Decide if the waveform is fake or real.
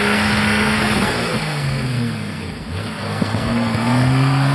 fake